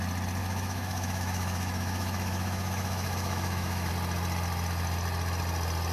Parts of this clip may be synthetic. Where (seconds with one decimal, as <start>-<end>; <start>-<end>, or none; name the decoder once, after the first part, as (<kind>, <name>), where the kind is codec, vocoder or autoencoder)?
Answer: 0.4-3.9 (autoencoder, DAC-VAE)